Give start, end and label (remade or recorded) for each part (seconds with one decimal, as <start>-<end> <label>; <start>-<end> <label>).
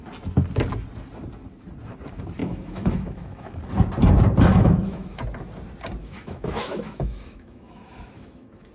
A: 0.0-2.4 recorded; 2.4-3.6 remade; 3.6-4.5 recorded; 4.5-5.2 remade; 5.2-6.0 recorded; 6.0-8.7 remade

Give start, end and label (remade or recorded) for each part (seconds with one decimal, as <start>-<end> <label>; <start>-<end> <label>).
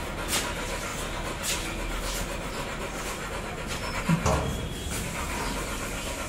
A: 0.0-6.3 recorded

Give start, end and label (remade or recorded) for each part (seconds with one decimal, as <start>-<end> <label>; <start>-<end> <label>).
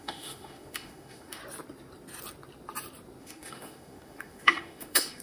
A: 0.0-1.4 remade; 1.4-3.2 recorded; 3.2-5.2 remade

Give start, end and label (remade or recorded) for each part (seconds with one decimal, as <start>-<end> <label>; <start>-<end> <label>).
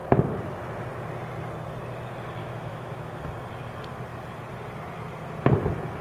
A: 0.0-2.4 recorded; 2.4-3.2 remade; 3.2-6.0 recorded